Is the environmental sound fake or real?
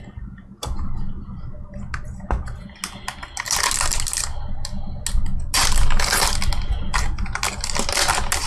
real